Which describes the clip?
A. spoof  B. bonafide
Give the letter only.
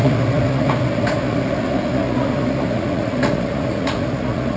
A